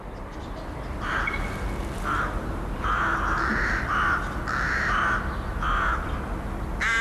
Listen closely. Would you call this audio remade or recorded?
recorded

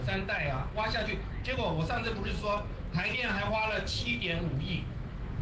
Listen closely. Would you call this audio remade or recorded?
remade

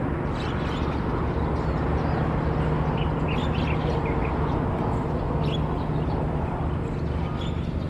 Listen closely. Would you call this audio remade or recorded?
recorded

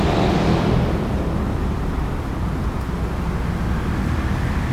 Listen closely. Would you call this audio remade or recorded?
recorded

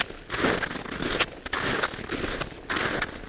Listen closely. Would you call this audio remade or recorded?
recorded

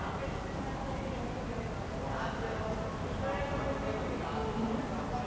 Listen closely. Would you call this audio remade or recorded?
recorded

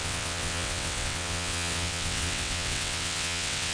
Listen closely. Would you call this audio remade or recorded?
remade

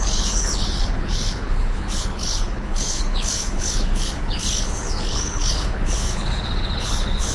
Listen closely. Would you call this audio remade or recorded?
remade